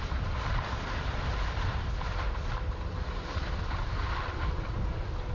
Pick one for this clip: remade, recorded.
recorded